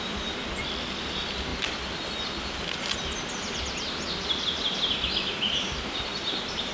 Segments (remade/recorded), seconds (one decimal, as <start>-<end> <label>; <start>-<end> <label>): 0.0-6.7 recorded